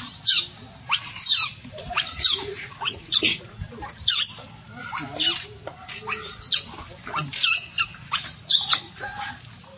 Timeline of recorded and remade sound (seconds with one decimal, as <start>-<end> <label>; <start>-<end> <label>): 0.0-1.4 recorded; 1.4-3.8 remade; 3.8-7.9 recorded; 7.9-9.3 remade; 9.3-9.8 recorded